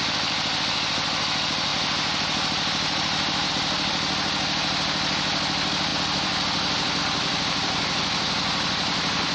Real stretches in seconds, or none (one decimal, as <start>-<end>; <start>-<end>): none